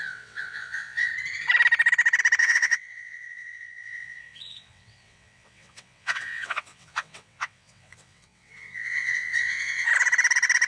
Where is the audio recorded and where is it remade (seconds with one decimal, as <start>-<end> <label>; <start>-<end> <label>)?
0.0-1.1 remade; 1.1-2.4 recorded; 2.4-9.9 remade; 9.9-10.7 recorded